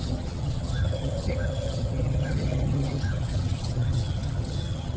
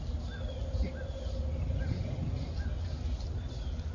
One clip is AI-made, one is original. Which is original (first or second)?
second